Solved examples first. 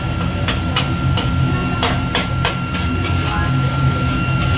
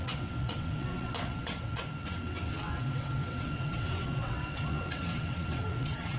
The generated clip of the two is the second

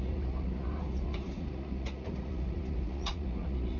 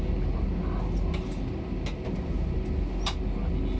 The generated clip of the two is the first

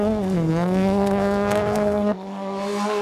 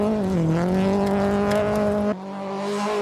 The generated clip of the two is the first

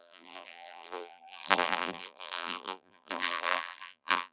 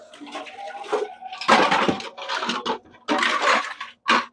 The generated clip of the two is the first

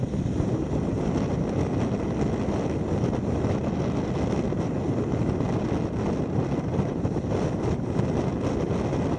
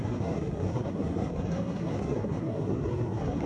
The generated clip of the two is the second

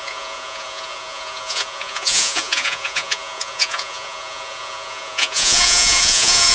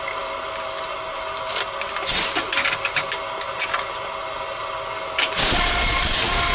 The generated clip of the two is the first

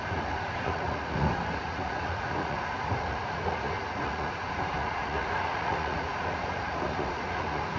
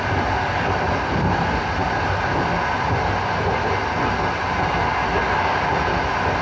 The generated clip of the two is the first